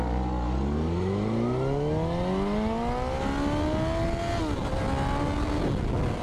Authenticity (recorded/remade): recorded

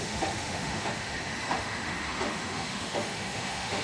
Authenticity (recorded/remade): remade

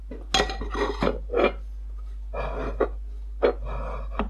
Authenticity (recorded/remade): recorded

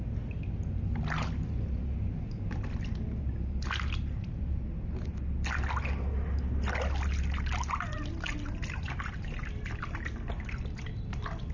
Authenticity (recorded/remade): recorded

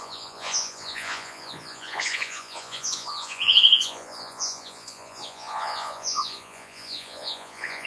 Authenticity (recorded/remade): remade